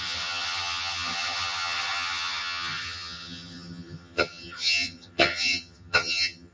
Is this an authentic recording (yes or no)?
no